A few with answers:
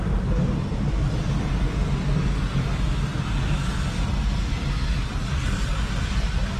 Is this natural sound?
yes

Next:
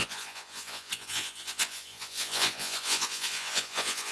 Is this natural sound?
no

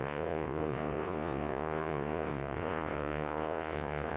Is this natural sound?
no